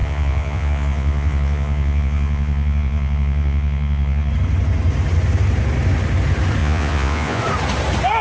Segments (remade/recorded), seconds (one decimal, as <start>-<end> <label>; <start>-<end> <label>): 0.0-4.3 remade; 4.3-6.6 recorded; 6.6-7.4 remade; 7.4-8.2 recorded